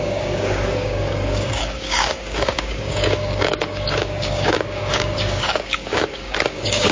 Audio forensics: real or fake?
fake